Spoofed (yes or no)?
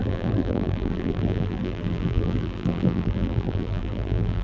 yes